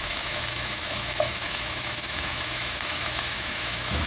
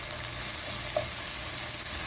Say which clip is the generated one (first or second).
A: first